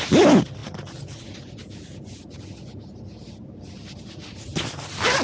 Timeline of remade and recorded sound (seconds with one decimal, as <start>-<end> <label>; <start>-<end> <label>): 0.0-5.2 recorded